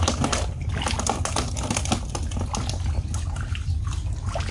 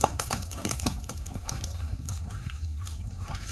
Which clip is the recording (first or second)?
first